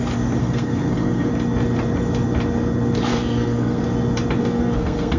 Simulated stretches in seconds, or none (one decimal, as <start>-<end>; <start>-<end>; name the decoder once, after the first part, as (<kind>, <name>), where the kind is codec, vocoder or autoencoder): 0.4-1.3 (codec, SNAC); 3.1-3.8; 4.4-5.2